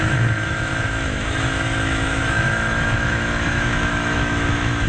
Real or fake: fake